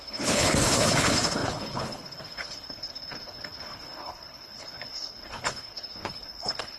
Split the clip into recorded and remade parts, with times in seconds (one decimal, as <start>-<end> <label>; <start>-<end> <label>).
0.0-6.8 remade